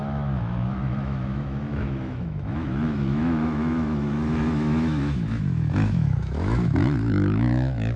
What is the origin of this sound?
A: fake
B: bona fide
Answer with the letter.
A